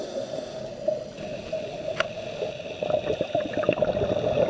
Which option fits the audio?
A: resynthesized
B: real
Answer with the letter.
B